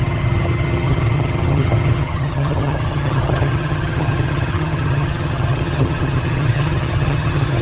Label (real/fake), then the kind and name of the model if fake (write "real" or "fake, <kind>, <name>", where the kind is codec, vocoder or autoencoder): fake, vocoder, HiFi-GAN